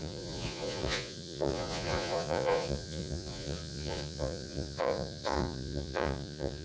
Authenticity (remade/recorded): remade